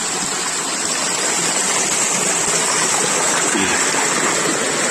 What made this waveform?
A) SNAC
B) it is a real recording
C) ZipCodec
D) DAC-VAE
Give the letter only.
B